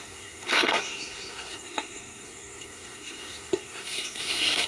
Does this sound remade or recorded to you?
remade